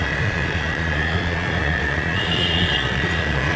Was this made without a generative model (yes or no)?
no